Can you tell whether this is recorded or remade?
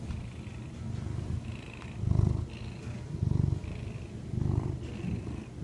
recorded